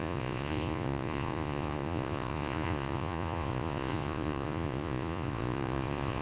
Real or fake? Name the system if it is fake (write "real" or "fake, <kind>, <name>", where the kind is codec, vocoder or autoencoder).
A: fake, vocoder, Vocos